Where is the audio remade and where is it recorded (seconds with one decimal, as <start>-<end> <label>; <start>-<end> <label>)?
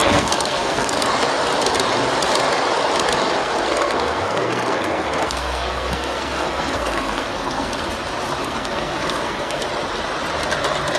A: 0.0-1.1 remade; 1.1-3.4 recorded; 3.4-7.9 remade; 7.9-8.4 recorded; 8.4-9.6 remade; 9.6-11.0 recorded